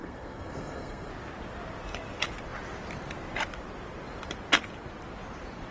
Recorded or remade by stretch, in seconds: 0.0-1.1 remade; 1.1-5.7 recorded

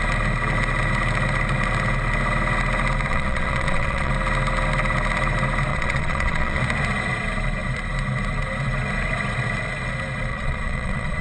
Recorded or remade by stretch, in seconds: 0.0-3.1 recorded; 3.1-4.1 remade; 4.1-5.7 recorded; 5.7-6.6 remade; 6.6-10.3 recorded; 10.3-11.2 remade